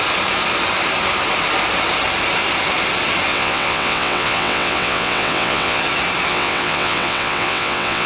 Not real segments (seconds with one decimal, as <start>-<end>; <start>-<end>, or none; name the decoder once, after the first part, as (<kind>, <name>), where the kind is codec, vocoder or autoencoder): 3.3-5.8 (vocoder, WaveNeXt); 6.3-8.1